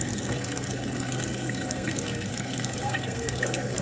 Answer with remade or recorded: remade